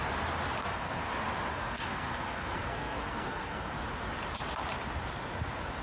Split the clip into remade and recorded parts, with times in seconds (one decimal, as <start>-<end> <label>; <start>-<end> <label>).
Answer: 0.0-0.6 recorded; 0.6-1.1 remade; 1.1-1.5 recorded; 1.5-3.7 remade; 3.7-5.8 recorded